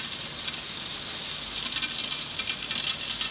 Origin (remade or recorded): recorded